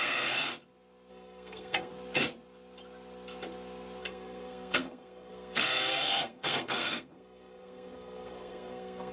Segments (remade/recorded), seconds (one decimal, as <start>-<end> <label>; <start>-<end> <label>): 0.0-0.5 remade; 0.5-1.1 recorded; 1.1-1.9 remade; 1.9-4.0 recorded; 4.0-9.1 remade